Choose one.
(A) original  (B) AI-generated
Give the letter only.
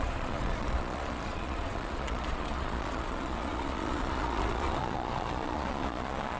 B